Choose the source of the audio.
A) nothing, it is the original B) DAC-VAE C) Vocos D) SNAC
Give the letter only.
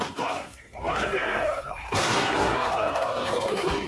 D